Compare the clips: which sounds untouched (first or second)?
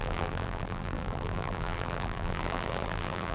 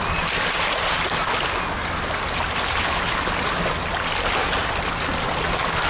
second